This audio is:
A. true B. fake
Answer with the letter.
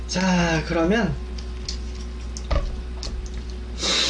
A